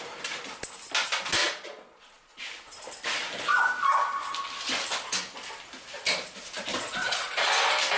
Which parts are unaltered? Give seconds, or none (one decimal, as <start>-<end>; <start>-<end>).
0.0-1.4; 2.4-6.7; 7.5-8.0